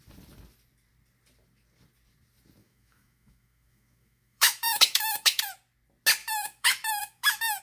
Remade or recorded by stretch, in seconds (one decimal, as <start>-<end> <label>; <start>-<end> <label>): 0.0-2.6 recorded; 2.6-5.4 remade; 5.4-6.2 recorded; 6.2-7.6 remade